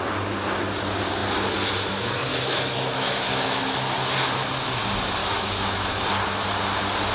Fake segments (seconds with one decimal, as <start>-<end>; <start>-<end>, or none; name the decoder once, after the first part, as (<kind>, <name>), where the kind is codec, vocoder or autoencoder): 2.3-3.6 (autoencoder, DAC-VAE); 5.2-6.0

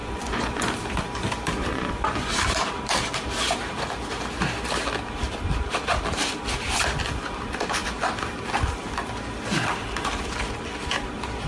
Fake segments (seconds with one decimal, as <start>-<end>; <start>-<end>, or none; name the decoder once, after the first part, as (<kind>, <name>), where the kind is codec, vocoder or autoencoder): 0.0-0.7 (vocoder, Vocos); 1.7-2.3